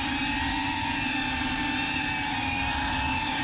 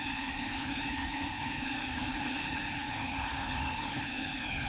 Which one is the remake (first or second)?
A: second